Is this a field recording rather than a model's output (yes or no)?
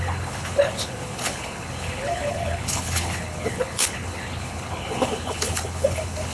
no